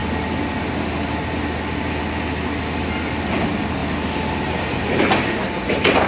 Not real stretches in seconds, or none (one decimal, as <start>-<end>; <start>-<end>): none